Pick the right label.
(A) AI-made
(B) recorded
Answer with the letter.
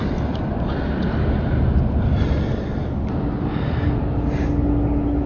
B